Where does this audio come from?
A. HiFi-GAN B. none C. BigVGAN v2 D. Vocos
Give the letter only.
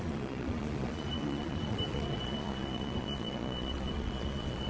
D